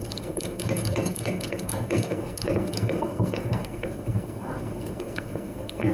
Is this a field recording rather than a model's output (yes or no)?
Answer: no